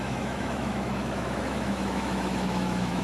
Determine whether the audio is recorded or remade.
remade